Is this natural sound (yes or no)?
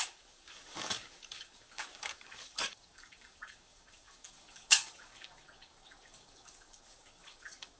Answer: no